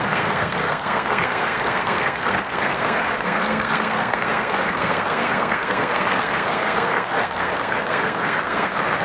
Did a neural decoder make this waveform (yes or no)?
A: yes